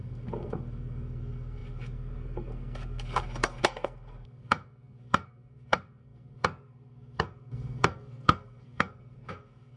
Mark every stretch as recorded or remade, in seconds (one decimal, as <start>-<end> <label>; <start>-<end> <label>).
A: 0.0-9.8 remade